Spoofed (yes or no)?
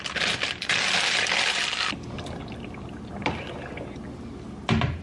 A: no